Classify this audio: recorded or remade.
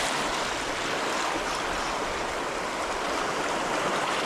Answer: recorded